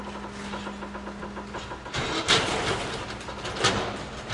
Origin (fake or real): real